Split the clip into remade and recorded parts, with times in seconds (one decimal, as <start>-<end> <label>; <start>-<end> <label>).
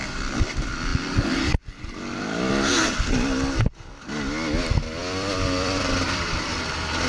0.0-0.9 recorded; 0.9-2.5 remade; 2.5-5.0 recorded; 5.0-6.6 remade; 6.6-7.1 recorded